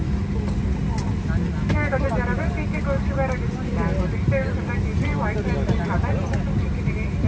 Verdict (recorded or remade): recorded